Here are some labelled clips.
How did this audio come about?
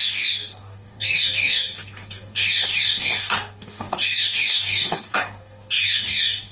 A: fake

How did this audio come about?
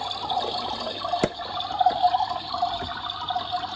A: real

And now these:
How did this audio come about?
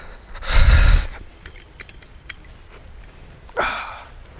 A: real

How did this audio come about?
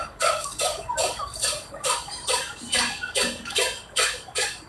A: fake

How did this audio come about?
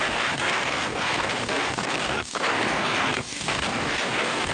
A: fake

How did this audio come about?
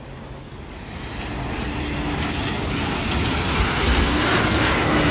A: real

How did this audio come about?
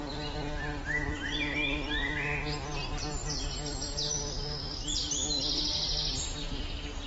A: real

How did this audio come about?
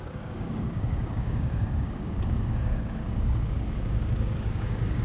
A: fake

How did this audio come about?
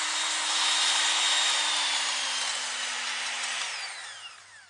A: real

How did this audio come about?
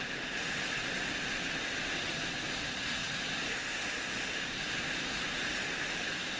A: real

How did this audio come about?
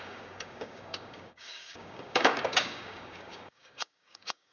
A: fake